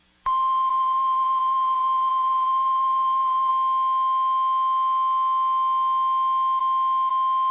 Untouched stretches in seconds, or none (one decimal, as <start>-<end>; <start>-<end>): 3.5-7.5